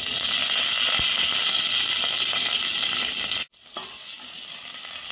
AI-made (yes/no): no